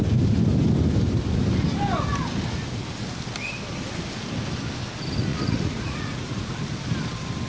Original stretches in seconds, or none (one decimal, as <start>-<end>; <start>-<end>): 0.0-5.3; 6.5-7.5